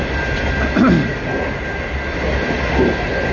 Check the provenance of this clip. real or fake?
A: real